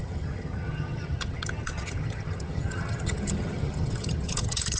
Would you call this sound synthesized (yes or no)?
yes